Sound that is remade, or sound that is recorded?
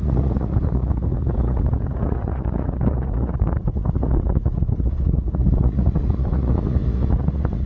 remade